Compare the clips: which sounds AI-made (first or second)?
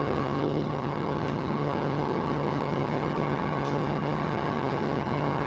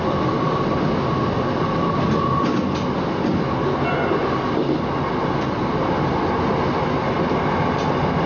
first